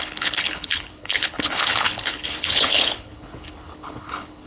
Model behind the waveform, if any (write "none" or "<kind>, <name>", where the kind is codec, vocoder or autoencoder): codec, HILCodec